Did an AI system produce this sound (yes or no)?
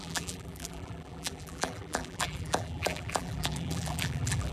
yes